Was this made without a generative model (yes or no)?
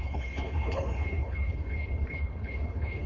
no